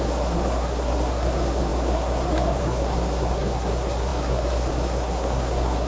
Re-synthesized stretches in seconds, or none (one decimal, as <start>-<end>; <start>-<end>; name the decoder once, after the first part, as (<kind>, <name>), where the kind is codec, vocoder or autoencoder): 0.0-5.9 (codec, SNAC)